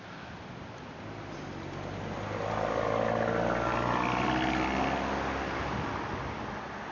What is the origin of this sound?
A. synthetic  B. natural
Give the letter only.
B